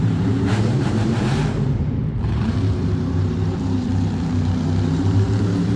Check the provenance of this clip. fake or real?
fake